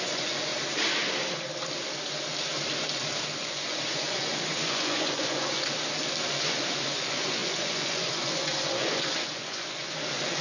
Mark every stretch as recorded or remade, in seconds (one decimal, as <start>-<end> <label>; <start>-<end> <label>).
0.0-0.5 remade; 0.5-3.4 recorded; 3.4-5.7 remade; 5.7-6.3 recorded; 6.3-10.4 remade